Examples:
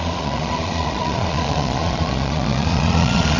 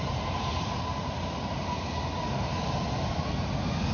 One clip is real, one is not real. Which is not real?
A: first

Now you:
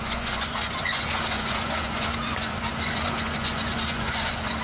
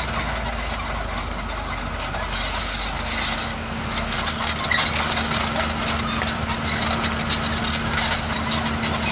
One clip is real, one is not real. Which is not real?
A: first